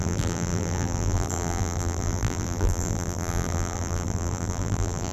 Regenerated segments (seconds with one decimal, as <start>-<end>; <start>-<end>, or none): 0.0-5.1